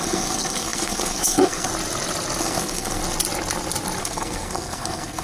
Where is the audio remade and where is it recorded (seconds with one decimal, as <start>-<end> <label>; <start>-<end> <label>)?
0.0-1.7 remade; 1.7-2.4 recorded; 2.4-3.0 remade; 3.0-4.0 recorded; 4.0-5.2 remade